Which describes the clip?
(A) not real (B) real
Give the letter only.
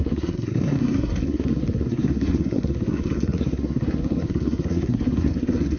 A